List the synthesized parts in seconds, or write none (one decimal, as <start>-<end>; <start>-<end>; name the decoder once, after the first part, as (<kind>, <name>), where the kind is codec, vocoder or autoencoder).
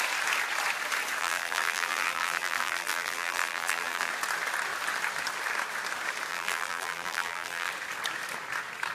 1.2-4.1 (vocoder, BigVGAN v2); 6.3-7.7